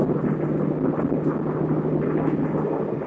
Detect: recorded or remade recorded